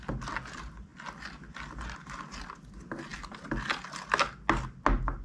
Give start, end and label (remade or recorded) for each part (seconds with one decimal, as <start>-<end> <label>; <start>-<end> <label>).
0.0-5.2 recorded